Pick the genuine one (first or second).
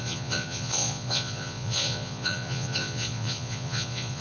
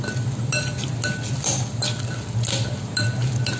second